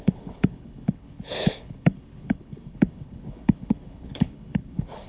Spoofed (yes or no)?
yes